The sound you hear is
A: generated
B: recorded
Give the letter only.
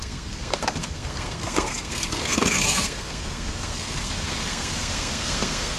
A